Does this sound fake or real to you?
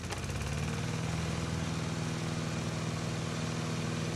real